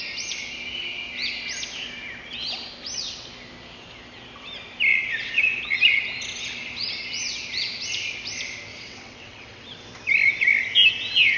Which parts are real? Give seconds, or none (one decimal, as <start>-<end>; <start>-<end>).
0.0-4.9; 5.6-8.7; 9.7-11.4